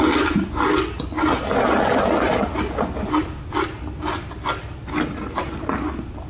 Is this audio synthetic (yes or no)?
no